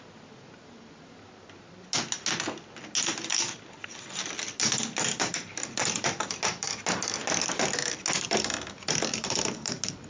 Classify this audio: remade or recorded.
recorded